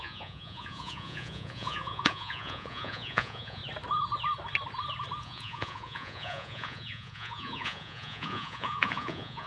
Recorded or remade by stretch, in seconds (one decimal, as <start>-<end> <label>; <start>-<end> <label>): 0.0-3.6 remade; 3.6-5.2 recorded; 5.2-9.5 remade